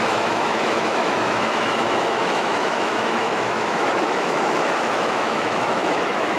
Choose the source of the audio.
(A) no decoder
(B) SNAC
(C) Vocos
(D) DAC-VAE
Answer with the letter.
D